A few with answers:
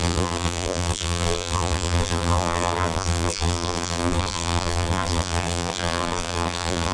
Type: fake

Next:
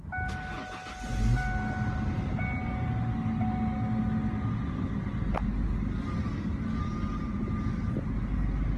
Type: real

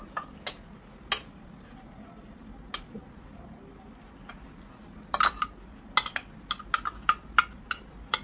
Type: real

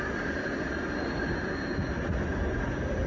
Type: real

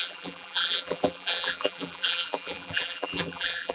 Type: fake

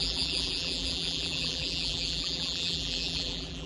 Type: fake